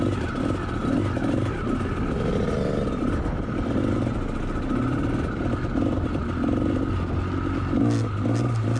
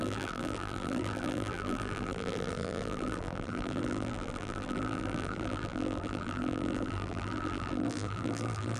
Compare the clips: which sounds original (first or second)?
first